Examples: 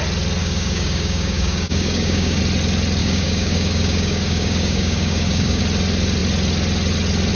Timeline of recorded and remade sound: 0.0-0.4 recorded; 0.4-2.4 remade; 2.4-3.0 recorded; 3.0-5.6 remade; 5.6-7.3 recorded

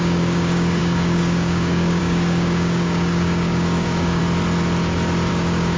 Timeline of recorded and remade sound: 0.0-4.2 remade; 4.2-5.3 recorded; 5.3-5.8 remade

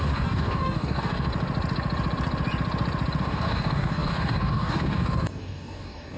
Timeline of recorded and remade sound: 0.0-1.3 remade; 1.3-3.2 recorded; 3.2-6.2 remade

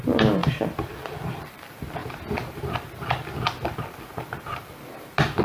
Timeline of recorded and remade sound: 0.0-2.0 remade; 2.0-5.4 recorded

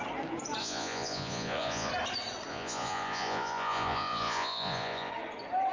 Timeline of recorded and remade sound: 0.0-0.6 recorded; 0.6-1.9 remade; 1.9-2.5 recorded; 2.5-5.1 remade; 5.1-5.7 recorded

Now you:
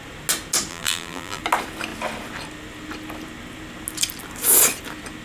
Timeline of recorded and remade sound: 0.0-0.7 recorded; 0.7-1.4 remade; 1.4-5.2 recorded

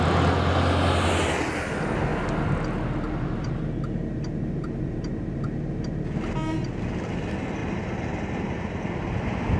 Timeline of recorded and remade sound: 0.0-9.6 recorded

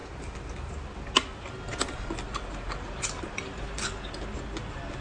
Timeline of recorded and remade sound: 0.0-5.0 recorded